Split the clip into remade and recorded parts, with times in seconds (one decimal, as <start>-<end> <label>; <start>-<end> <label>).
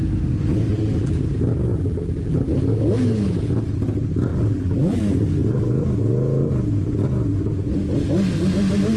0.0-0.7 recorded; 0.7-1.2 remade; 1.2-1.7 recorded; 1.7-2.6 remade; 2.6-4.3 recorded; 4.3-5.0 remade; 5.0-9.0 recorded